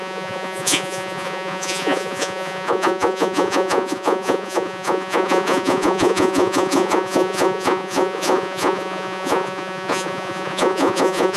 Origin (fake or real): fake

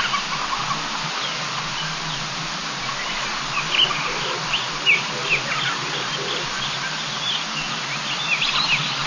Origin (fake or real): real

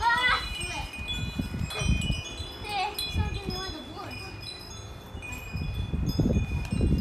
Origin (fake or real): real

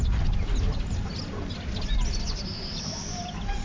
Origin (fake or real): real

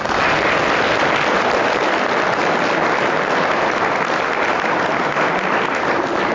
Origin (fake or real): real